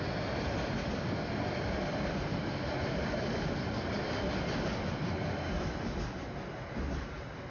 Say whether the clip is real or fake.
real